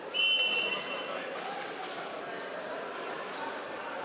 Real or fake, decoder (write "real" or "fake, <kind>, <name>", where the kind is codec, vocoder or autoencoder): real